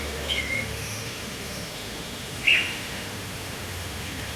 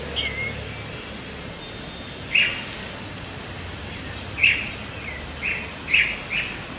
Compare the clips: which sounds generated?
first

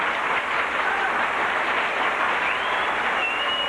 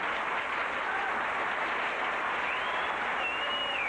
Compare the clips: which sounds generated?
first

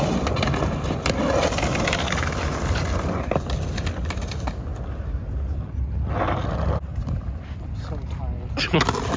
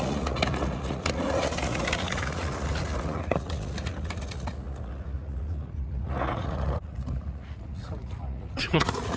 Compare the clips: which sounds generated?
second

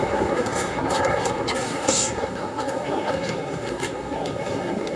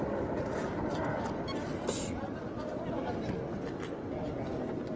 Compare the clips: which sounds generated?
first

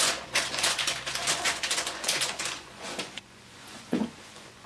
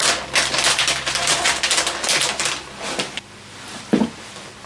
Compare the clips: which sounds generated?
first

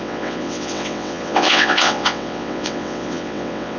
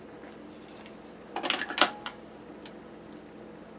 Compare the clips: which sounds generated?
first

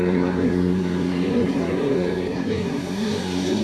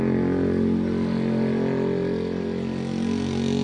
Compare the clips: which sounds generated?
first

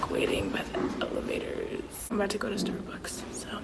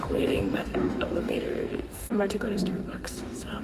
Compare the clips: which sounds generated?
second